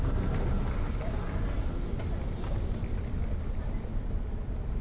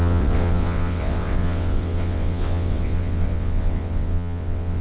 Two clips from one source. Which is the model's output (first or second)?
second